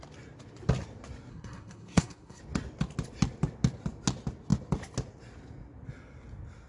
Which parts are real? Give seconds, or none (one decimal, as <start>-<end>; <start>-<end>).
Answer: 0.0-1.3; 2.4-6.7